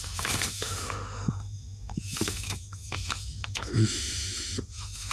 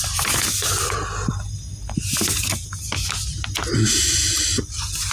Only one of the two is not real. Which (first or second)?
first